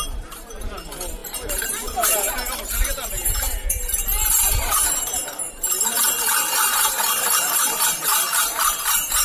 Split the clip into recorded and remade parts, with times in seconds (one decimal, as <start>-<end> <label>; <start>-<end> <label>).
0.0-9.2 remade